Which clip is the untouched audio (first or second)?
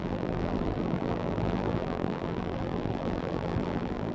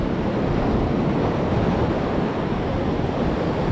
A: second